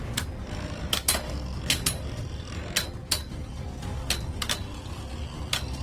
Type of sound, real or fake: real